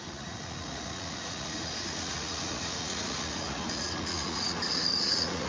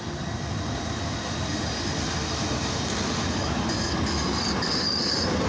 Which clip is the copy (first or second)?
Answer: first